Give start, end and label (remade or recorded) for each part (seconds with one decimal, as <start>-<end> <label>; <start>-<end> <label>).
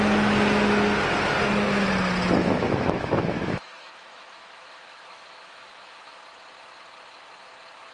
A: 0.0-2.4 recorded; 2.4-6.2 remade; 6.2-7.9 recorded